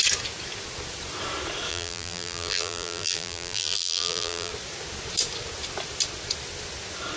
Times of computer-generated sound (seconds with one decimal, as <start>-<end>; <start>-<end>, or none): 1.7-4.5